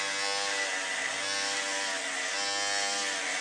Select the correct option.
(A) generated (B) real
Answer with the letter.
B